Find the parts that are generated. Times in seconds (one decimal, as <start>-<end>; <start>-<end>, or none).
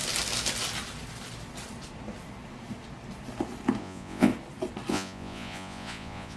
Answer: 3.8-4.3; 4.9-6.4